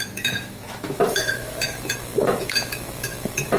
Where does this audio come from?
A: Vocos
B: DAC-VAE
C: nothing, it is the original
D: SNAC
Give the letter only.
B